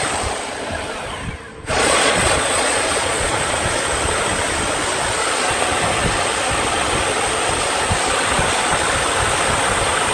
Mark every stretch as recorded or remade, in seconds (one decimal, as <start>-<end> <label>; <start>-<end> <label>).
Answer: 0.0-1.5 recorded; 1.5-3.4 remade; 3.4-10.1 recorded